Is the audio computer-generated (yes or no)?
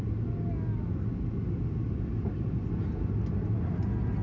no